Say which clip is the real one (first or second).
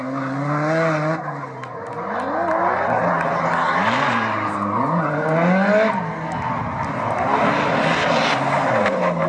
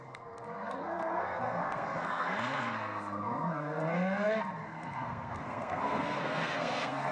first